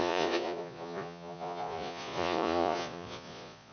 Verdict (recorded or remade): remade